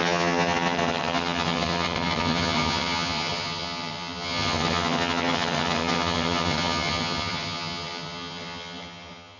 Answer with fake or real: fake